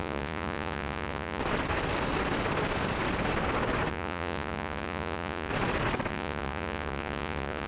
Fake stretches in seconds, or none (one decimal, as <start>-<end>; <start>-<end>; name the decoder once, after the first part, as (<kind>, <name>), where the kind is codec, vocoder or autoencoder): 0.0-1.4 (vocoder, Vocos); 3.9-5.5; 6.1-7.7